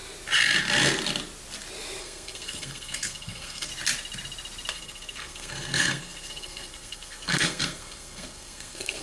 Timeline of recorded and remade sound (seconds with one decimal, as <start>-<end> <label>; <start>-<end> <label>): 0.0-2.0 recorded; 2.0-3.7 remade; 3.7-4.7 recorded; 4.7-9.0 remade